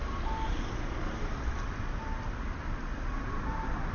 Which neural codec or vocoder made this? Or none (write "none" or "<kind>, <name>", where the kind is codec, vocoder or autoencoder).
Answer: none